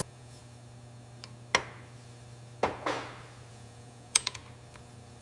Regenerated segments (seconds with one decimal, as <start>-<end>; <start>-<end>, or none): 0.0-0.4; 3.5-4.4